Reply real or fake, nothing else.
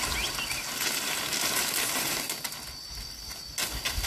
real